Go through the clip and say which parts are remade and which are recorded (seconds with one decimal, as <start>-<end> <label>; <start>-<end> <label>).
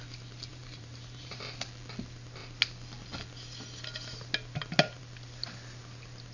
0.0-0.5 recorded; 0.5-1.4 remade; 1.4-6.3 recorded